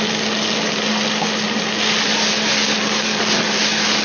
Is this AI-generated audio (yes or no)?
no